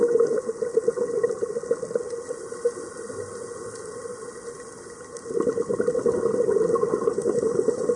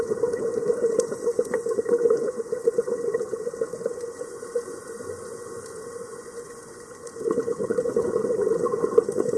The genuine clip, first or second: first